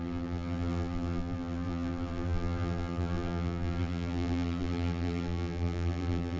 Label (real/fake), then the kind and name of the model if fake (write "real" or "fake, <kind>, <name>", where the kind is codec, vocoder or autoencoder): fake, vocoder, BigVGAN v2